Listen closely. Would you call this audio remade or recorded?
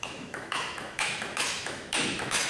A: remade